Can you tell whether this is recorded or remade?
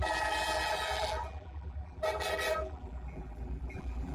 remade